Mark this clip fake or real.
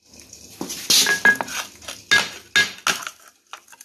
real